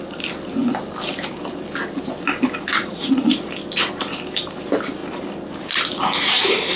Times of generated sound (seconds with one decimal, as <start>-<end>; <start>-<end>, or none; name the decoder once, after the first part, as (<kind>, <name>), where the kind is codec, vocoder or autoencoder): 2.8-3.5 (vocoder, Vocos)